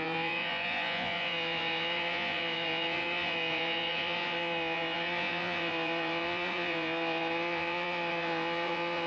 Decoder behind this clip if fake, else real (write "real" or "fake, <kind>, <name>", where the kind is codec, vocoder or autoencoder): fake, vocoder, Vocos